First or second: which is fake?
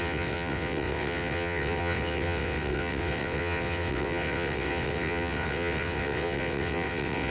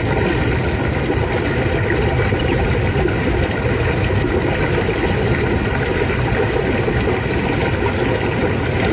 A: first